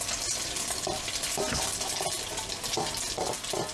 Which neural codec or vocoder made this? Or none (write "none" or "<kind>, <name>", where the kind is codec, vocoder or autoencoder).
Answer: none